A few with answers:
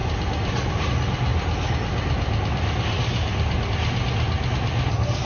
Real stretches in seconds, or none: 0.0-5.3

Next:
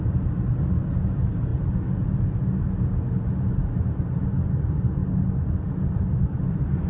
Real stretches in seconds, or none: 0.0-6.9

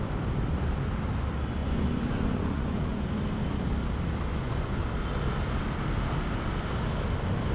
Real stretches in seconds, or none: 0.0-1.6; 3.1-4.3; 4.8-7.5

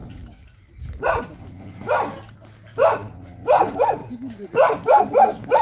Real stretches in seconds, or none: 0.0-5.6